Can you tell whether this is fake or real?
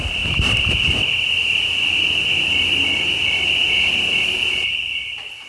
real